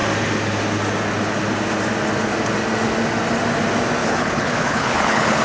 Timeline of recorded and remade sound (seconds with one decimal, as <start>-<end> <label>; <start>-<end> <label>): 0.0-4.0 recorded; 4.0-5.4 remade